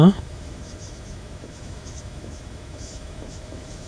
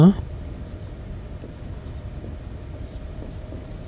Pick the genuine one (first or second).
second